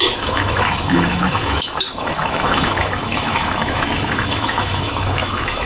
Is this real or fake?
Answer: fake